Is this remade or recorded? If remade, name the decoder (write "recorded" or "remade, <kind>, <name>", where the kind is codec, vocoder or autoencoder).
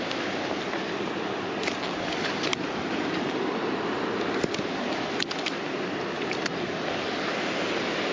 recorded